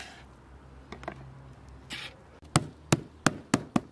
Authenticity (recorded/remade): recorded